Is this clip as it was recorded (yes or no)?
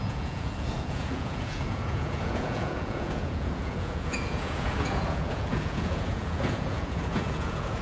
no